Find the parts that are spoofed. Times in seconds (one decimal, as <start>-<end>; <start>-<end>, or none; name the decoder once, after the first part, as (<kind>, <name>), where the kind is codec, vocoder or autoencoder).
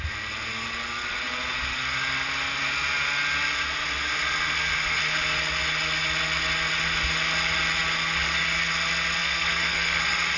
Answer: 9.2-10.0 (codec, SNAC)